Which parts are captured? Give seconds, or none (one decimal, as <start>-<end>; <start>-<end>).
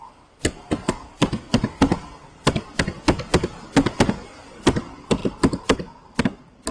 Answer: 0.0-6.7